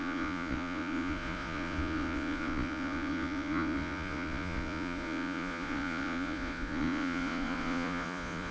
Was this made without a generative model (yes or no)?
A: no